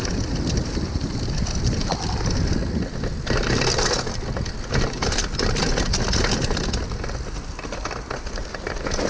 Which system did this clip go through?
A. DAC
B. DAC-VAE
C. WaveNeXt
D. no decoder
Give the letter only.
D